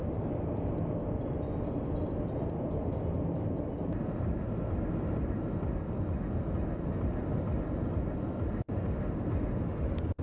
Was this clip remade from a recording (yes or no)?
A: no